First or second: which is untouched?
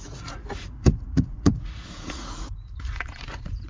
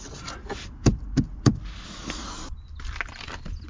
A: second